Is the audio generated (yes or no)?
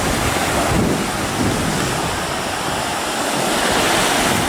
no